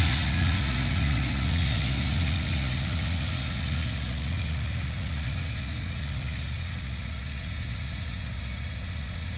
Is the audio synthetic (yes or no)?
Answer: yes